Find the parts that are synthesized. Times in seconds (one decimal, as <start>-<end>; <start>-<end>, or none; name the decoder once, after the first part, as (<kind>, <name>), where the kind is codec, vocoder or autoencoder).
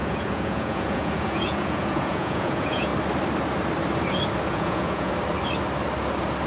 0.0-2.9 (vocoder, Vocos); 4.5-5.1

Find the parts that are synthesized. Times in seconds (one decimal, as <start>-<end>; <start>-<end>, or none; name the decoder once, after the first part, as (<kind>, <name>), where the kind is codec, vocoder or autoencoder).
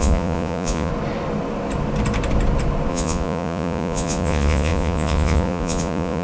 0.0-0.9 (vocoder, Vocos); 2.9-6.2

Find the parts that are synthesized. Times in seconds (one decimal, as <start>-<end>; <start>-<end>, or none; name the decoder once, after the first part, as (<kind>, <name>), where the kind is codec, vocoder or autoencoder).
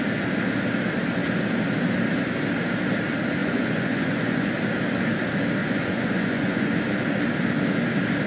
3.4-4.5 (vocoder, Vocos); 5.6-6.8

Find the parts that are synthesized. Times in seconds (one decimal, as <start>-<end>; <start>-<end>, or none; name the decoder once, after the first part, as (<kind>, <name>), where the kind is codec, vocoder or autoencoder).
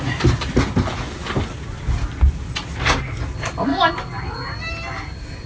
none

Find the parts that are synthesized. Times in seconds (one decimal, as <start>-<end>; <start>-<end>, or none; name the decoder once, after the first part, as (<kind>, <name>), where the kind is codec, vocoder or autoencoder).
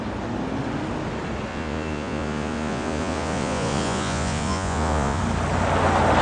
1.5-5.2 (vocoder, Vocos)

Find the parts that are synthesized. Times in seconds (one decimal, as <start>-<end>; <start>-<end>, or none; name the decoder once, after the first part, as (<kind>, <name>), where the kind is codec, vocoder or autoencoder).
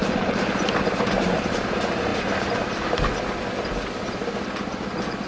none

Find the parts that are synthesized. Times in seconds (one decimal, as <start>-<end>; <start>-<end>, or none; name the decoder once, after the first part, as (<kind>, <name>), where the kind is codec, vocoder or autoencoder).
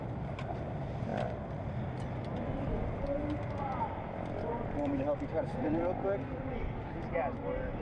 none